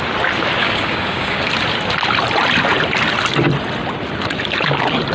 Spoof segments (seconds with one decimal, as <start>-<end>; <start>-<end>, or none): 0.6-1.5